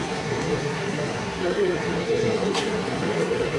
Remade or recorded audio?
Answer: remade